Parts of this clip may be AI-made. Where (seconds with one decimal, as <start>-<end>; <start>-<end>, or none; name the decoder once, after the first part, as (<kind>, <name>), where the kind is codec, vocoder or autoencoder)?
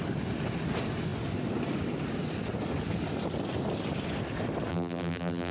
4.7-5.5 (vocoder, BigVGAN v2)